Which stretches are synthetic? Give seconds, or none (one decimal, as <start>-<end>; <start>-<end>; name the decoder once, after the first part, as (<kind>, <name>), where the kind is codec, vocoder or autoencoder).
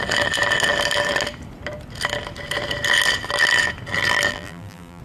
4.3-5.0 (vocoder, BigVGAN v2)